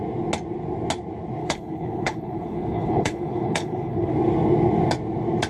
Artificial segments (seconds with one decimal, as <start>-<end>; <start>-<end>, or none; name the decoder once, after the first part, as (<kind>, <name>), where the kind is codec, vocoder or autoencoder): 1.4-4.1 (codec, HILCodec)